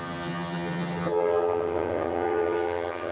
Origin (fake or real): fake